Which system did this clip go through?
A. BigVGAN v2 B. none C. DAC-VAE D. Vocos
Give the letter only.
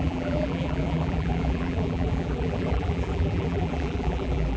A